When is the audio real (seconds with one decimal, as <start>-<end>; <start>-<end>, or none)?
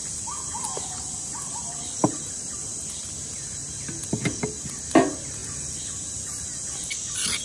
0.0-7.4